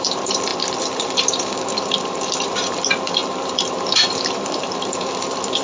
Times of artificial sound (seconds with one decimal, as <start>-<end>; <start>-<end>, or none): 0.0-5.6